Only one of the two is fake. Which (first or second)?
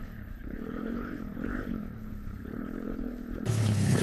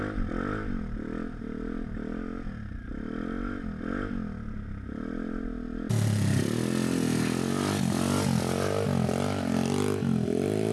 first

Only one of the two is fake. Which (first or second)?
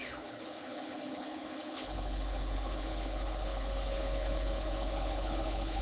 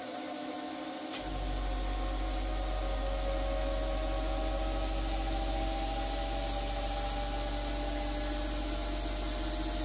first